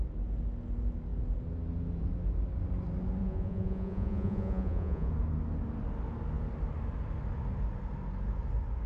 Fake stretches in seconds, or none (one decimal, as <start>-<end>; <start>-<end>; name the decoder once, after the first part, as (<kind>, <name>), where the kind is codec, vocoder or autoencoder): 3.2-5.1 (vocoder, Vocos)